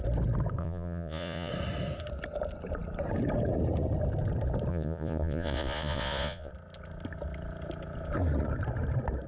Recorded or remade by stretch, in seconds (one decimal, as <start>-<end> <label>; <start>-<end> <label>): 0.0-0.6 recorded; 0.6-1.5 remade; 1.5-4.7 recorded; 4.7-6.5 remade; 6.5-9.3 recorded